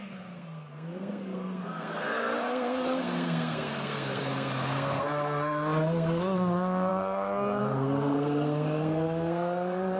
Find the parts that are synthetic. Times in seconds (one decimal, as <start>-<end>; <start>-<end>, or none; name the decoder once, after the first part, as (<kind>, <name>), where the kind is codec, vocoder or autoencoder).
0.0-10.0 (codec, SNAC)